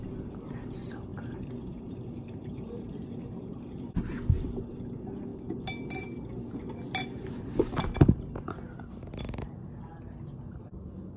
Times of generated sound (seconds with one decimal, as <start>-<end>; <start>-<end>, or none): 1.1-3.6